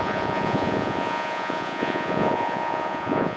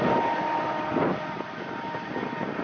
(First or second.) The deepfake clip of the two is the first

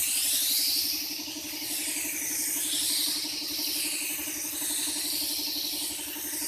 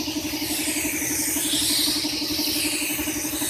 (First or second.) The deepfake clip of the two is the first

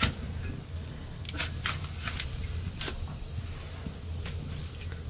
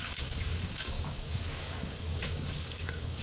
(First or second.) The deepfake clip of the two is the second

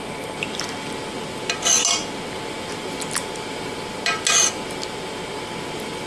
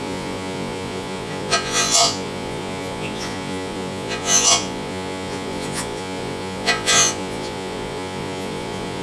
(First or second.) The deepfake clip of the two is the second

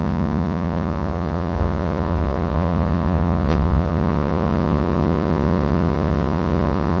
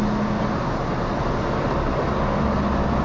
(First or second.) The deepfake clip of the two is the first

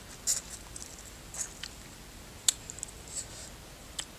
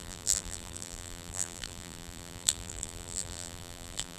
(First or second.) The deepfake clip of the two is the second